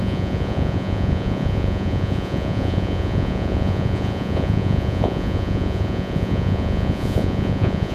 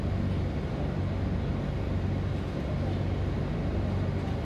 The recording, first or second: second